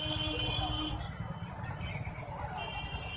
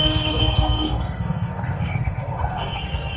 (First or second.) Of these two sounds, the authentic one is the first